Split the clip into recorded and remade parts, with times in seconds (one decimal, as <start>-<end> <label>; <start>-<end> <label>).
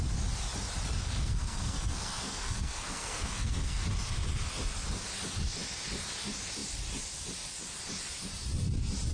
0.0-1.0 recorded; 1.0-3.8 remade; 3.8-9.1 recorded